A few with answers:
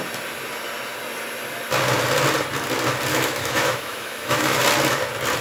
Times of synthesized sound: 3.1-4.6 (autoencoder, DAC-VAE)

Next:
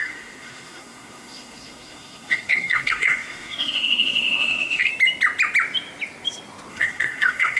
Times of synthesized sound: 0.0-4.9 (codec, SNAC); 6.7-7.6

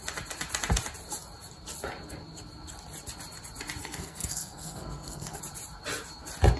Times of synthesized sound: 3.8-5.4 (codec, SNAC)